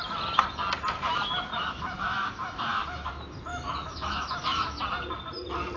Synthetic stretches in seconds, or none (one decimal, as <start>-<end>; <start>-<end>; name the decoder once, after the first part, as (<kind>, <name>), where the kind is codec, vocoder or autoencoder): 1.5-3.1 (autoencoder, DAC-VAE); 3.5-4.8